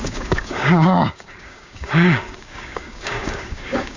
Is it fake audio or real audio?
fake